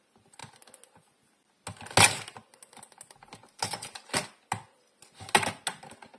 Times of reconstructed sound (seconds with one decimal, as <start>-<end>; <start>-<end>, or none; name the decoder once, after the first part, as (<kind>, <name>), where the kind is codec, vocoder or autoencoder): none